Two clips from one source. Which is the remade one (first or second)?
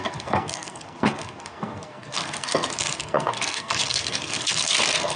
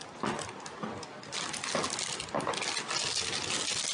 first